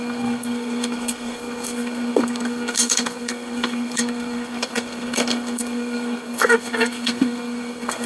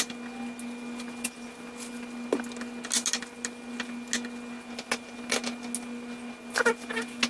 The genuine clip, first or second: second